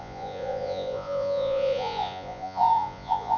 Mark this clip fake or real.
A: fake